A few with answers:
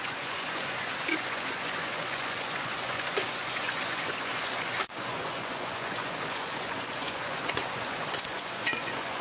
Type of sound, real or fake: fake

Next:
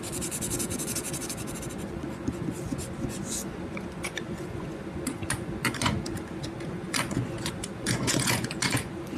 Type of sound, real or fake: fake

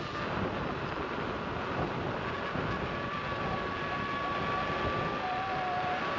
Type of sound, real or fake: real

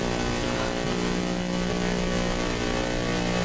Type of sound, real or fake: real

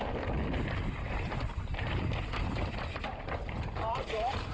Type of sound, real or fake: fake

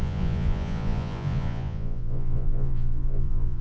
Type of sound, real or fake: fake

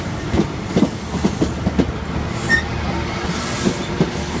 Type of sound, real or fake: real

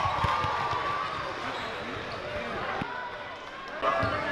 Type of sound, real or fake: real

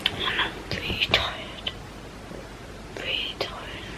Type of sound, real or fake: real